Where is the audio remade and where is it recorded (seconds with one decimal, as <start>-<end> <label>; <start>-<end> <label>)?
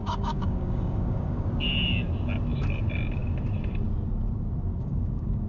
0.0-1.5 remade; 1.5-4.7 recorded; 4.7-5.5 remade